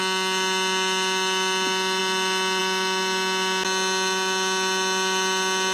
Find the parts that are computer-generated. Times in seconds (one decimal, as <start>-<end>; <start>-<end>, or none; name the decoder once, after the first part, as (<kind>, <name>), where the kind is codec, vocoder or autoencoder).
none